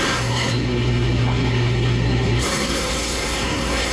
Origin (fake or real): fake